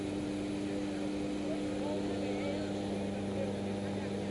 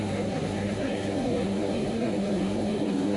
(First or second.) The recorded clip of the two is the first